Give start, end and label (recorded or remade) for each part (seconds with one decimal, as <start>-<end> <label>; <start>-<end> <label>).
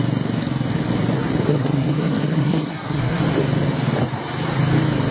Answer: 0.0-1.5 recorded; 1.5-3.2 remade; 3.2-5.1 recorded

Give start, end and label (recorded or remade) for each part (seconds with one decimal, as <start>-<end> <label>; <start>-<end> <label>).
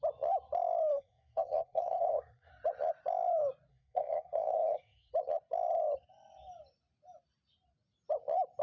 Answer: 0.0-0.9 recorded; 0.9-2.5 remade; 2.5-3.7 recorded; 3.7-5.1 remade; 5.1-8.6 recorded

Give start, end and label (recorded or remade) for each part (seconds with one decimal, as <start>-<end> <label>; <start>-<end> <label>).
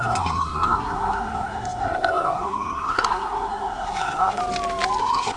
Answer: 0.0-4.4 remade; 4.4-5.0 recorded; 5.0-5.4 remade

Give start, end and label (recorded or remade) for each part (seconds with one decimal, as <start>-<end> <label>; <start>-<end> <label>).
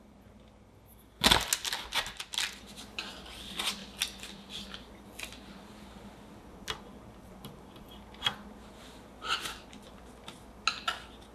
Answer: 0.0-11.3 recorded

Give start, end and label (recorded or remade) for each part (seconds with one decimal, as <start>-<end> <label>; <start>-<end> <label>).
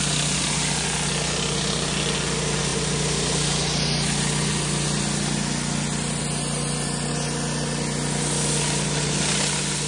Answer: 0.0-9.9 recorded